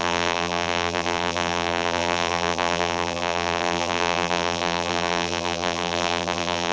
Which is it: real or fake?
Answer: fake